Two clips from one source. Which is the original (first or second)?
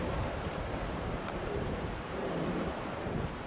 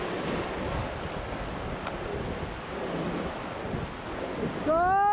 second